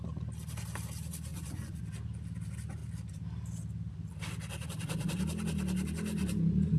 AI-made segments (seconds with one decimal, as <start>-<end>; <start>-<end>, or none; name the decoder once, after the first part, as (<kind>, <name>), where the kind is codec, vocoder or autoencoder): 1.3-1.8 (vocoder, Vocos)